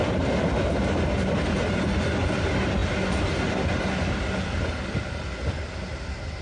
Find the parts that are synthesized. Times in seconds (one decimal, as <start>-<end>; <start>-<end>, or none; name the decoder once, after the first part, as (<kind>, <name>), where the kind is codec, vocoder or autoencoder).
none